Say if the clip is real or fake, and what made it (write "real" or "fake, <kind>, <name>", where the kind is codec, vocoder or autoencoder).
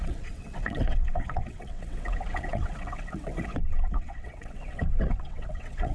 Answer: fake, vocoder, WaveNeXt